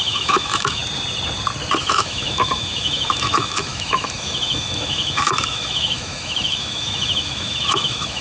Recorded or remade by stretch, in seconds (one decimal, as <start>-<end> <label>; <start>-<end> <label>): 0.0-0.8 remade; 0.8-1.8 recorded; 1.8-8.2 remade